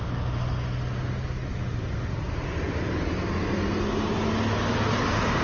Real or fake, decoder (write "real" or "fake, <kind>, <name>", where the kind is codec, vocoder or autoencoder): real